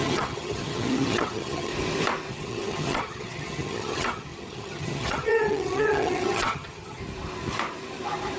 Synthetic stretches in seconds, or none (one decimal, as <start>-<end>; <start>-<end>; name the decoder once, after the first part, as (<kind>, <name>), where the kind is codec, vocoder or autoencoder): 0.0-1.7 (vocoder, HiFi-GAN); 2.3-7.0